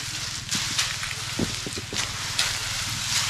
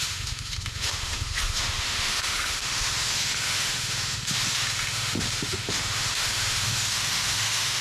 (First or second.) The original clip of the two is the first